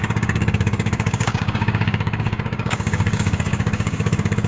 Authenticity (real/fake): fake